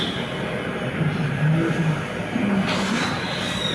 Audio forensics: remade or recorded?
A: recorded